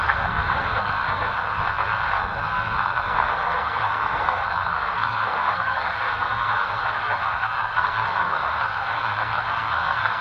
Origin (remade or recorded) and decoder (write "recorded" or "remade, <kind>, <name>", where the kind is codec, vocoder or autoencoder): remade, codec, SNAC